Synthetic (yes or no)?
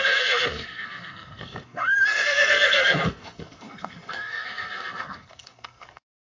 yes